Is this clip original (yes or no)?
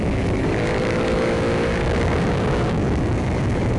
no